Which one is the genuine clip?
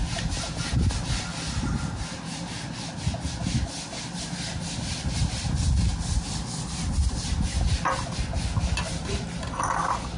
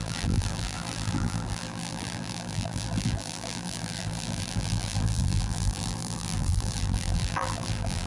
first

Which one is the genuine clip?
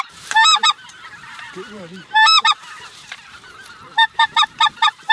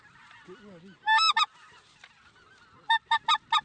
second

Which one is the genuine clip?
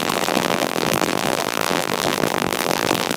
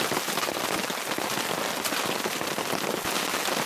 second